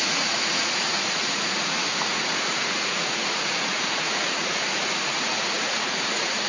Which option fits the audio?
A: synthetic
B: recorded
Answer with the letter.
A